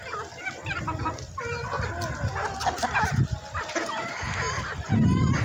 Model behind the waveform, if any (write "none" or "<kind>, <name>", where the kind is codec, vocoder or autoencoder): none